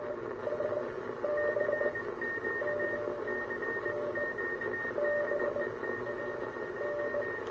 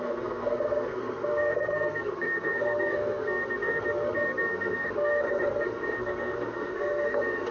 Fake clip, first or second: second